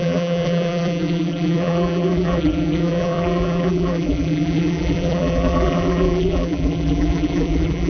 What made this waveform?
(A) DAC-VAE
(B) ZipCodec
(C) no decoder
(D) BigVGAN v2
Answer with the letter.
D